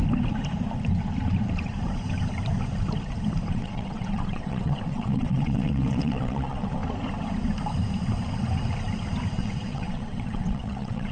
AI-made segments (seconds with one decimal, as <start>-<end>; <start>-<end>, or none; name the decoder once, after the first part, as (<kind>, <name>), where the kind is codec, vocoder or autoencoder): 3.5-6.8 (vocoder, WaveNeXt); 9.3-11.1